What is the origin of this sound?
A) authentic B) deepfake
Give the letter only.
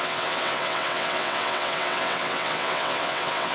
B